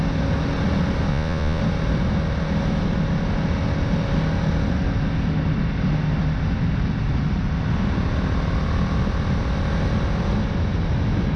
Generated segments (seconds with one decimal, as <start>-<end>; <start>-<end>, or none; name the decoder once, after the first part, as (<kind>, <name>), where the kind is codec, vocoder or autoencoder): 1.1-1.6 (vocoder, Vocos)

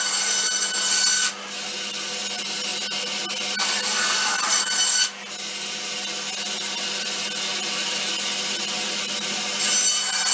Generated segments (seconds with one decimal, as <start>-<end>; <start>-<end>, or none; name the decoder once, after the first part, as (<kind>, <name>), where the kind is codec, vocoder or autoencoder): none

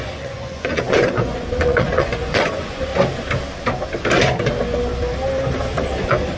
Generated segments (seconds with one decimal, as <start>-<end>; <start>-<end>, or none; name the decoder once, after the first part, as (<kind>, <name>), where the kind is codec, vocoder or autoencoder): 0.0-2.9 (vocoder, Vocos); 6.0-6.4

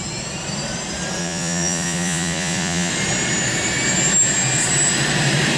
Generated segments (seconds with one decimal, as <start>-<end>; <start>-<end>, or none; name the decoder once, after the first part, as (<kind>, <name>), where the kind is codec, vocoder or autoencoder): 1.2-2.9 (vocoder, Vocos)

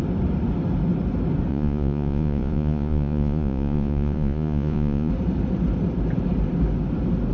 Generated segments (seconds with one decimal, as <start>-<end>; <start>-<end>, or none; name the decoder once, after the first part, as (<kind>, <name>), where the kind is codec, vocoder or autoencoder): 1.5-5.1 (vocoder, Vocos)

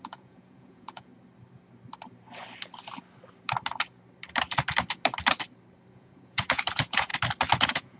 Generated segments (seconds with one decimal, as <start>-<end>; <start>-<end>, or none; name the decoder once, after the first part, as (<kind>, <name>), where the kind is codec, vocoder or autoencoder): 0.0-1.1 (vocoder, Vocos); 5.9-7.1; 7.6-8.0

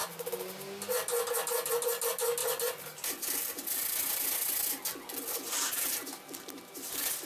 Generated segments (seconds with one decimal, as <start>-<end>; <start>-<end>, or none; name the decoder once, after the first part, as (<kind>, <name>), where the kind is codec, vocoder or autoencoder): none

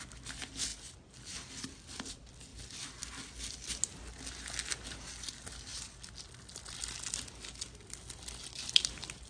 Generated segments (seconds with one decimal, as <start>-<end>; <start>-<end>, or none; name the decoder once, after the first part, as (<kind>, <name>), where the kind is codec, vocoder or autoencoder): none